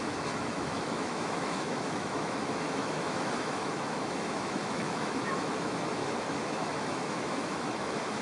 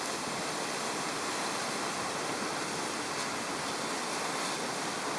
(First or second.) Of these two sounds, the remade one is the first